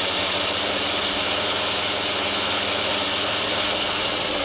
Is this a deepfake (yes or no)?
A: no